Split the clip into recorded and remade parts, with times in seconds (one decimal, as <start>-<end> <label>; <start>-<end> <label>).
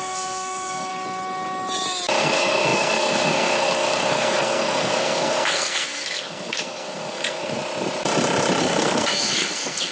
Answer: 0.0-0.9 remade; 0.9-2.2 recorded; 2.2-7.6 remade; 7.6-8.6 recorded; 8.6-9.9 remade